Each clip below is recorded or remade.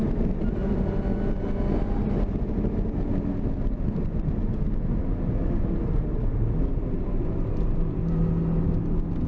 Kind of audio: recorded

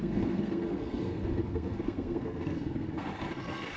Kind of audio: remade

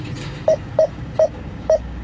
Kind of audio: remade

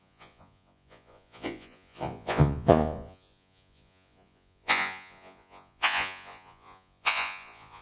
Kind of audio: remade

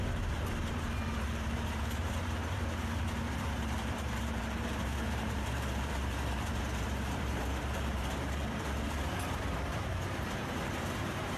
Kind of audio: remade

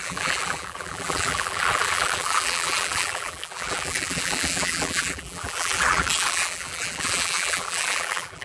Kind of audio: remade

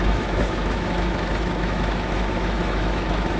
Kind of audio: remade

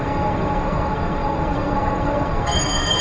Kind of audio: remade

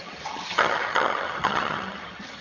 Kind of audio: remade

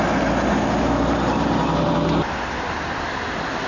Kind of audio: recorded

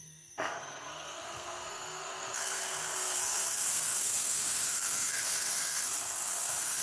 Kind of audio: remade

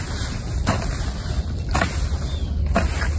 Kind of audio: recorded